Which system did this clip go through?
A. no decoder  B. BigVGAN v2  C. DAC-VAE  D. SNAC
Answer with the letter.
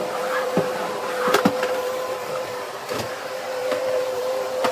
B